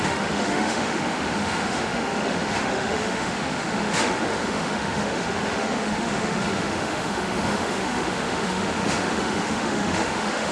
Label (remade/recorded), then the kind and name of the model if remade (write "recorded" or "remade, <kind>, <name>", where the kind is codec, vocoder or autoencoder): remade, autoencoder, DAC-VAE